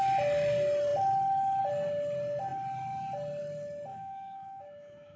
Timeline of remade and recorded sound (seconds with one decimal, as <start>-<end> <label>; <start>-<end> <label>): 0.0-3.9 recorded; 3.9-5.2 remade